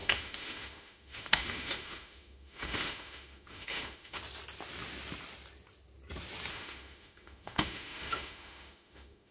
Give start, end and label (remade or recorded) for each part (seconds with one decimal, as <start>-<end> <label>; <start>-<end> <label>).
0.0-4.2 remade; 4.2-6.5 recorded; 6.5-9.3 remade